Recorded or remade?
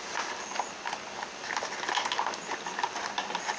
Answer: recorded